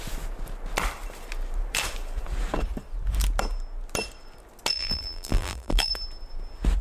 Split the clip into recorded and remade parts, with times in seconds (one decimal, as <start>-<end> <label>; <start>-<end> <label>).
0.0-4.7 recorded; 4.7-5.9 remade; 5.9-6.8 recorded